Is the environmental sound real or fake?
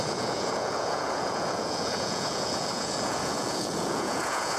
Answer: fake